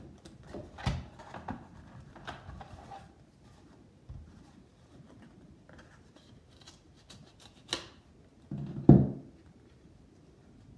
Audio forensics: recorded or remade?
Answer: recorded